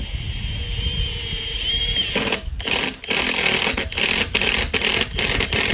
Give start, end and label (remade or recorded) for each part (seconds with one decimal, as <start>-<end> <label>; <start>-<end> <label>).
0.0-5.7 recorded